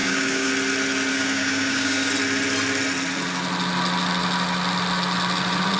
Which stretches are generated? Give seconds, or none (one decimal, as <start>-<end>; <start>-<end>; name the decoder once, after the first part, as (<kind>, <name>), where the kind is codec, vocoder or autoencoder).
0.0-0.5 (codec, DAC); 1.1-2.1